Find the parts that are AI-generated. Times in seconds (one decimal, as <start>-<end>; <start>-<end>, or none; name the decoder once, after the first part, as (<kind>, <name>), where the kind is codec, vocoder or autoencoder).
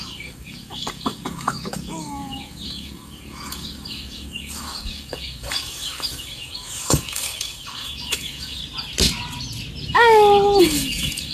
0.0-8.6 (codec, DAC); 10.6-11.3